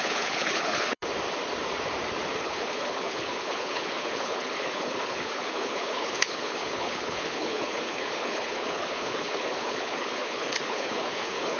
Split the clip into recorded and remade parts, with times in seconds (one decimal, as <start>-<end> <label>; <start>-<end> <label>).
0.0-1.1 remade; 1.1-2.4 recorded; 2.4-11.6 remade